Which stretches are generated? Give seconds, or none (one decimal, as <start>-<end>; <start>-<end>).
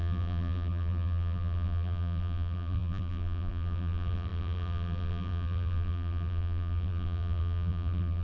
0.0-8.2